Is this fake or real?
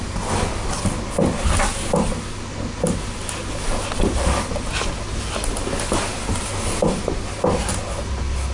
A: real